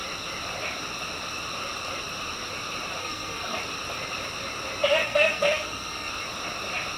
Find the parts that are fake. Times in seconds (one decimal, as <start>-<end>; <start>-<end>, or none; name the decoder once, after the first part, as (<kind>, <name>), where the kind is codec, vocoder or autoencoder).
3.0-3.6 (codec, SNAC); 5.0-6.1